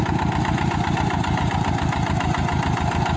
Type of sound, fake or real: real